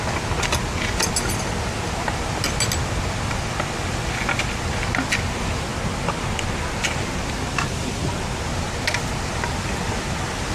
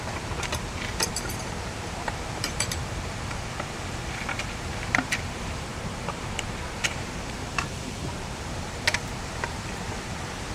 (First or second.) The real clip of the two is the first